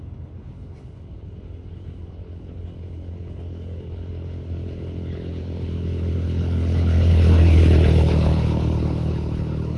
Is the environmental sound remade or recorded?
remade